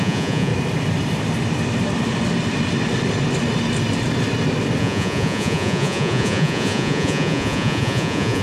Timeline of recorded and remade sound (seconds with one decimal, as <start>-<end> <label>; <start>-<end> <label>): 0.0-0.5 remade; 0.5-4.8 recorded; 4.8-8.4 remade